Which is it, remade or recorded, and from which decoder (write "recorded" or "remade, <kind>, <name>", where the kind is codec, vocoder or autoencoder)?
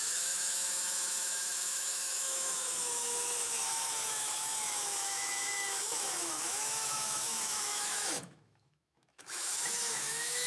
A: remade, autoencoder, DAC-VAE